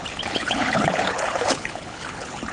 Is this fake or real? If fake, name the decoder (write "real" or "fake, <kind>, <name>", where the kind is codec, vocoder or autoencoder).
fake, codec, HILCodec